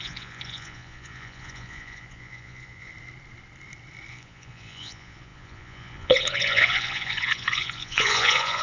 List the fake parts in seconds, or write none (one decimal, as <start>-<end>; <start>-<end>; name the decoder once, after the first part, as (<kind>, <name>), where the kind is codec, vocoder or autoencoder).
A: 0.0-2.9 (vocoder, Vocos); 4.1-8.6